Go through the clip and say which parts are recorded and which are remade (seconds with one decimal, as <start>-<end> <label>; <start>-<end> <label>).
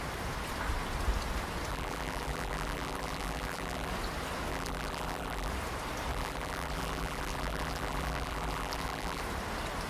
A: 0.0-1.7 recorded; 1.7-3.9 remade; 3.9-4.5 recorded; 4.5-5.5 remade; 5.5-6.1 recorded; 6.1-9.2 remade; 9.2-9.9 recorded